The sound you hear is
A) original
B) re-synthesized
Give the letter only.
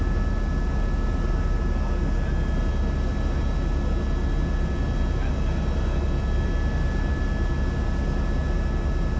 A